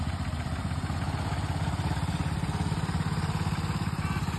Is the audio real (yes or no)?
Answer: yes